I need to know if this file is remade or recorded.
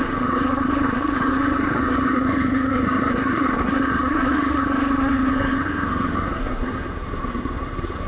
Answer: remade